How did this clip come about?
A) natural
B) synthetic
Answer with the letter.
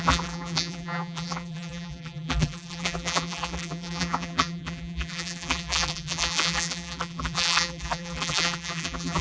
B